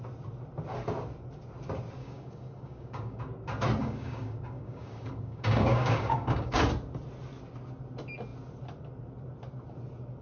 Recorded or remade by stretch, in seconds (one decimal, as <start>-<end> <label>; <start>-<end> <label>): 0.0-2.0 recorded; 2.0-3.2 remade; 3.2-3.8 recorded; 3.8-6.6 remade; 6.6-10.2 recorded